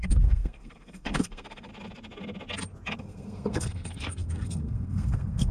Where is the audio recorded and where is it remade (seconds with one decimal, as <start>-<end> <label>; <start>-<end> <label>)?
0.0-1.7 remade; 1.7-3.0 recorded; 3.0-5.5 remade